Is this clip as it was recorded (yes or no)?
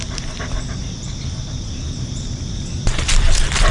yes